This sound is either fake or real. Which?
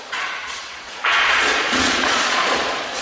fake